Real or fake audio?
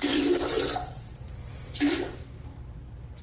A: fake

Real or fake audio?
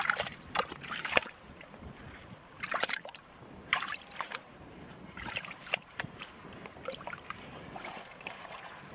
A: fake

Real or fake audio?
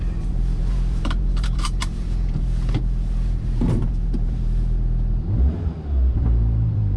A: fake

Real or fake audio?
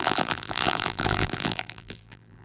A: fake